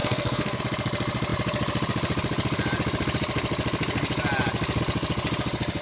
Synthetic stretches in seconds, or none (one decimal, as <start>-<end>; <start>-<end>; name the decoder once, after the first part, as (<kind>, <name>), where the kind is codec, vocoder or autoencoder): 0.0-0.6 (codec, SNAC)